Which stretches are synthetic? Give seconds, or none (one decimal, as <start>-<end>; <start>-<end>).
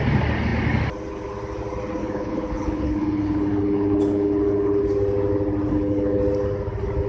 2.0-4.8; 5.7-6.2